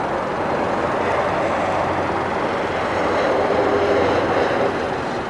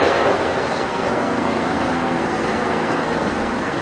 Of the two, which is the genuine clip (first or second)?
first